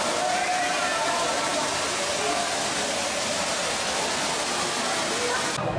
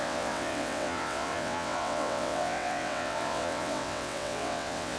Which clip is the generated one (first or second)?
second